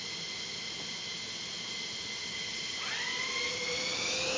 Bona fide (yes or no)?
yes